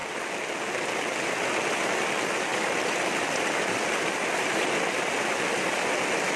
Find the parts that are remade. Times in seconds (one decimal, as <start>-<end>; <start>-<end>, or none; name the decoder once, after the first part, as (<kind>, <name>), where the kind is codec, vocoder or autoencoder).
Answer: none